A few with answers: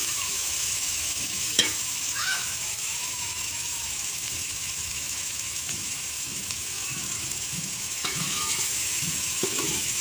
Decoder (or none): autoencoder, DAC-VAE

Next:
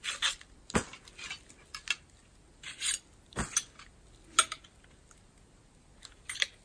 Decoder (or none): none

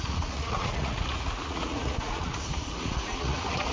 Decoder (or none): vocoder, Vocos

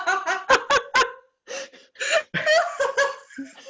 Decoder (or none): none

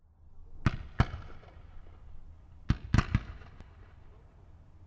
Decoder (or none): none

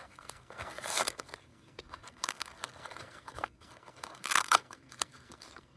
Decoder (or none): codec, SNAC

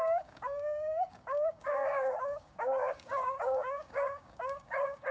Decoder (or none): codec, DAC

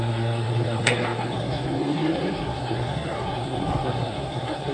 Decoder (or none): codec, SNAC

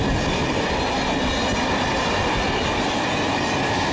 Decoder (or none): none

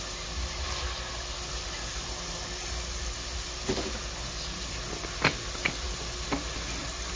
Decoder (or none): none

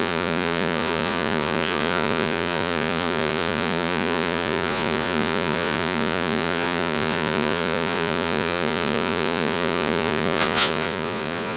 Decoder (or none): vocoder, Vocos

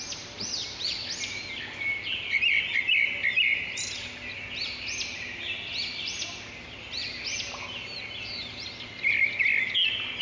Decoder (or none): none